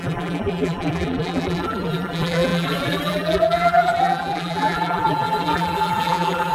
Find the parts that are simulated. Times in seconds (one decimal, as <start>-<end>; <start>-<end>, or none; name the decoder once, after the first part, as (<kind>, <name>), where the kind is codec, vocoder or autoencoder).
0.0-6.5 (vocoder, BigVGAN v2)